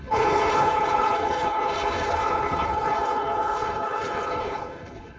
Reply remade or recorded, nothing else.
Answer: remade